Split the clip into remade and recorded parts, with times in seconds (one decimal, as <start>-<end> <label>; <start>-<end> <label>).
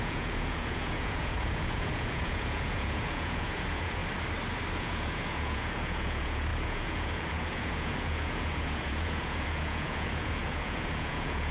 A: 0.0-4.0 remade; 4.0-4.7 recorded; 4.7-11.5 remade